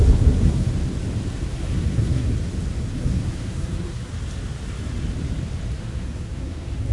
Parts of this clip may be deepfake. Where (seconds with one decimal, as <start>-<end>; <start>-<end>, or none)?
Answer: 0.0-0.7; 1.5-2.3; 2.9-4.1; 5.8-6.9